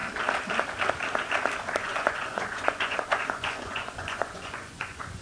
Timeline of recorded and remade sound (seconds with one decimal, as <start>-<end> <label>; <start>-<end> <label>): 0.0-1.8 recorded; 1.8-5.2 remade